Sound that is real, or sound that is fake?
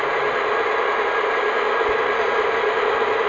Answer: real